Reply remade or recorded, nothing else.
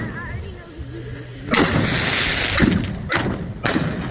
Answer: recorded